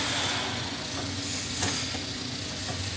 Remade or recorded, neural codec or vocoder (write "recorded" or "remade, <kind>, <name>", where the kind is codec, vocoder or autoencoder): remade, vocoder, Vocos